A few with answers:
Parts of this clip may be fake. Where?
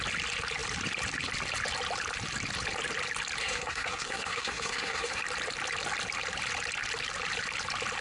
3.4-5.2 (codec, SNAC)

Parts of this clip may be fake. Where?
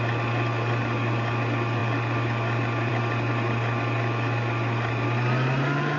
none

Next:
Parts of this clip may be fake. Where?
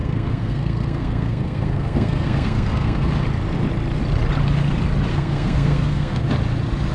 0.0-3.1 (codec, SNAC); 5.1-6.2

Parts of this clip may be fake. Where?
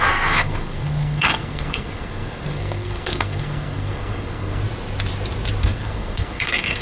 0.0-4.6 (codec, SNAC); 5.6-6.8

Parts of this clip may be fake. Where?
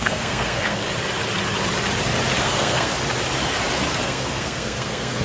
0.0-0.8 (codec, SNAC); 2.4-2.9; 3.9-5.2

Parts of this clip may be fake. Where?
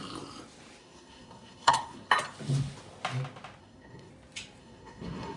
0.8-2.1 (codec, SNAC); 3.6-4.1; 4.6-5.4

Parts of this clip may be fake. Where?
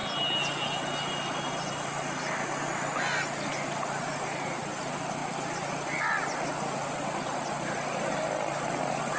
none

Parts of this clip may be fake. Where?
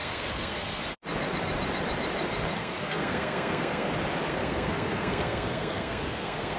0.0-0.8 (codec, SNAC); 2.6-3.9; 4.3-6.6